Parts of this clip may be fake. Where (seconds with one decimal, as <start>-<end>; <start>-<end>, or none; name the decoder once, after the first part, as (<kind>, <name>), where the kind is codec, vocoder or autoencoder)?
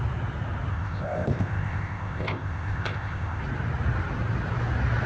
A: 0.7-3.4 (codec, ZipCodec)